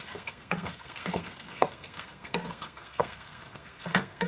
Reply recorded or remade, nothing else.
remade